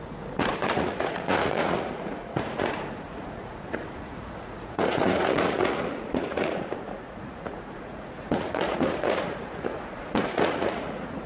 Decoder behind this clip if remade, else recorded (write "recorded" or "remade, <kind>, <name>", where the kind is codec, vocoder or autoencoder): remade, vocoder, Vocos